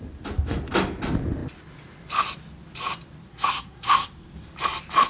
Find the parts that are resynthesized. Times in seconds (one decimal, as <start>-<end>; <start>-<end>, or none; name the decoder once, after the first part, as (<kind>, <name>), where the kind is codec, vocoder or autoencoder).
3.3-4.1 (codec, SNAC)